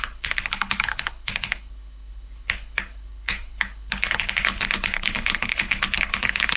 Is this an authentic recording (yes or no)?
no